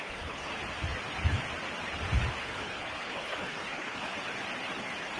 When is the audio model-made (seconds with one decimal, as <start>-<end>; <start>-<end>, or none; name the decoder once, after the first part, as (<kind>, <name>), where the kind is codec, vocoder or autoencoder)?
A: 0.0-0.5 (codec, HILCodec); 2.4-4.1